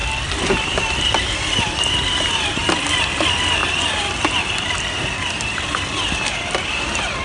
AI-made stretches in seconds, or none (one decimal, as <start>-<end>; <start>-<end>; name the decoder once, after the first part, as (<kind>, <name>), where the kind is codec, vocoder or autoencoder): 0.0-1.9 (vocoder, BigVGAN v2)